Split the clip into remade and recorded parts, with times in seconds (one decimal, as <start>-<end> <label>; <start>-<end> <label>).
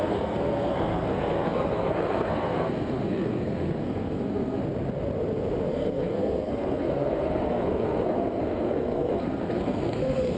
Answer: 0.0-4.6 remade; 4.6-5.7 recorded; 5.7-10.4 remade